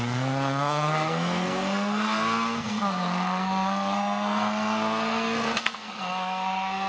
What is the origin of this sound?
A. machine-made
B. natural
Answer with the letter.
A